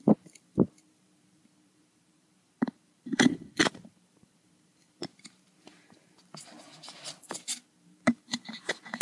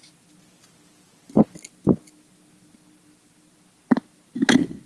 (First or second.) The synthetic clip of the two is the first